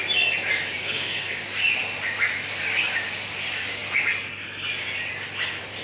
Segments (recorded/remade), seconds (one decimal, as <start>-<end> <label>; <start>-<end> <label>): 0.0-0.8 recorded; 0.8-1.4 remade; 1.4-5.8 recorded